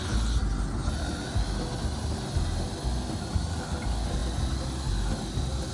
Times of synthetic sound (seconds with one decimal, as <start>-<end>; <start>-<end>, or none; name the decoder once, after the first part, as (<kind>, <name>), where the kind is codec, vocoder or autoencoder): none